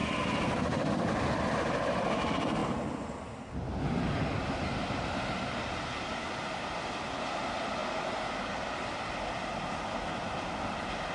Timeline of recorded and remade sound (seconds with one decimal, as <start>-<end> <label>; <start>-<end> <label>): 0.0-11.1 recorded